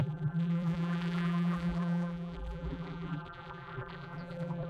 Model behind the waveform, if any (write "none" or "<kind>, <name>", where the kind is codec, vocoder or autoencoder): vocoder, BigVGAN v2